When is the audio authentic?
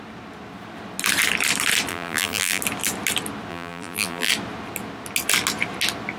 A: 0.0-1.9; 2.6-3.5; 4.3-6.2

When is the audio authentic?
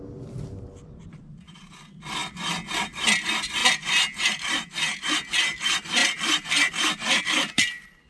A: 0.0-8.1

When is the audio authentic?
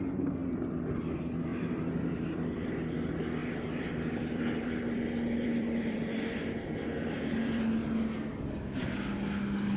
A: 0.0-0.4; 0.9-1.5; 2.7-3.4; 7.6-9.8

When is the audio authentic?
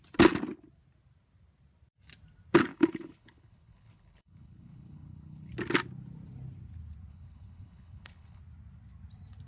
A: 0.0-2.7; 5.5-7.1; 8.4-9.5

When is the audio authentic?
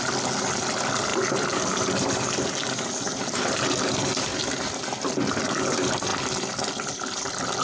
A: 0.0-7.6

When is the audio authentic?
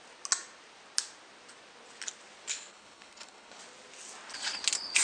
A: 0.0-2.5; 3.6-5.0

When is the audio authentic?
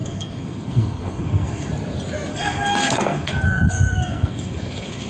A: 1.7-2.3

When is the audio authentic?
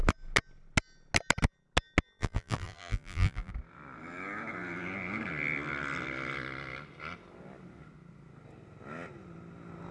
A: 0.0-2.2; 3.5-9.9